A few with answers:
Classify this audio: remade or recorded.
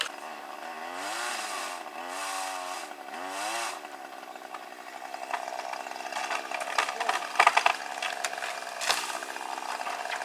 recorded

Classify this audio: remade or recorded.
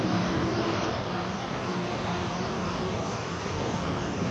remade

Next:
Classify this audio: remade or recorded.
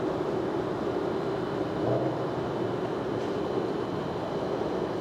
recorded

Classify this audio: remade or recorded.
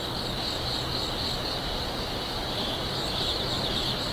recorded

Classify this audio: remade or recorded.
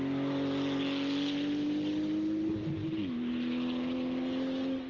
recorded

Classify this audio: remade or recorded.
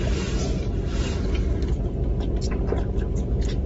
recorded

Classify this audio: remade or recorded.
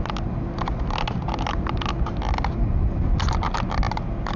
recorded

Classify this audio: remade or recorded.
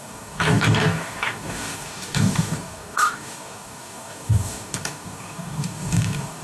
remade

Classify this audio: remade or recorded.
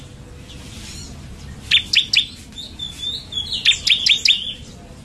recorded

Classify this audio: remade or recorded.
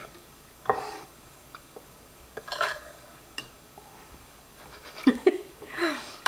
remade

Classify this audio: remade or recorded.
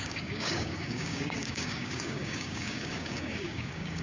remade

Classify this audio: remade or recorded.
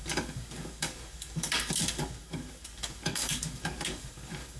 remade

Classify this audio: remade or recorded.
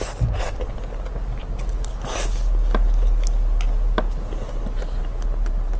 recorded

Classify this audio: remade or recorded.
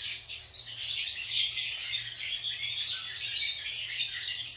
recorded